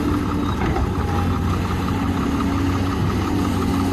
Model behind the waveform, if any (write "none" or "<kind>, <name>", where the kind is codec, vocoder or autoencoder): none